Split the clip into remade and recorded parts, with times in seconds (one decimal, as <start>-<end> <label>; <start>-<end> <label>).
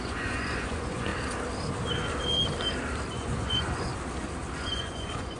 0.0-1.1 remade; 1.1-3.1 recorded; 3.1-3.9 remade; 3.9-4.6 recorded; 4.6-5.4 remade